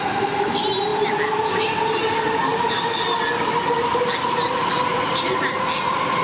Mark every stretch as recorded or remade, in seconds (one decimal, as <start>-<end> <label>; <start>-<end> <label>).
0.0-6.2 recorded